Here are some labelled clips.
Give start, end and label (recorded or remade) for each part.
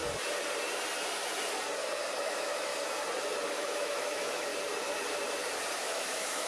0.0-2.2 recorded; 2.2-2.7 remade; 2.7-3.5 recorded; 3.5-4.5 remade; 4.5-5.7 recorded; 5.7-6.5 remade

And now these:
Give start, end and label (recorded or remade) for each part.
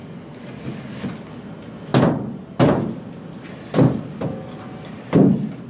0.0-1.1 remade; 1.1-5.7 recorded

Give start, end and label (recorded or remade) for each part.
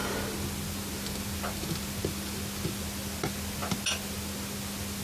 0.0-5.0 recorded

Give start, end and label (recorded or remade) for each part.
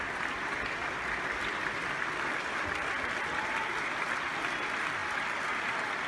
0.0-6.1 recorded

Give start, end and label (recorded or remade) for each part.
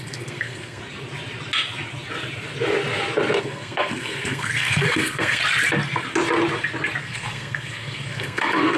0.0-0.8 remade; 0.8-3.4 recorded; 3.4-5.4 remade; 5.4-7.0 recorded; 7.0-8.8 remade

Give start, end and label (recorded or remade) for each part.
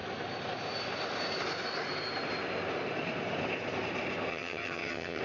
0.0-4.3 recorded; 4.3-5.2 remade